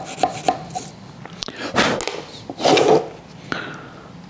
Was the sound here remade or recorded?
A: recorded